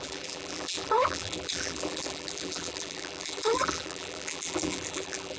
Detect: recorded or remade remade